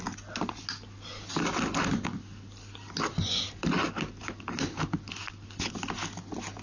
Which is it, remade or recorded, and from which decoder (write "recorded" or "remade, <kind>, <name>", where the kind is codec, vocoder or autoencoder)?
recorded